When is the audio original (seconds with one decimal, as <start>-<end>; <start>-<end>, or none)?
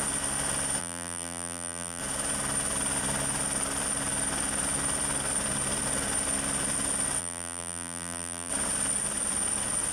0.0-0.8; 2.0-7.2; 8.5-9.9